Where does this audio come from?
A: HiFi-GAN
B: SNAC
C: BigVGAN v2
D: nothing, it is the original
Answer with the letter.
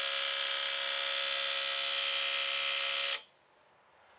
D